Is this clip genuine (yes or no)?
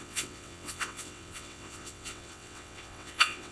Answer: no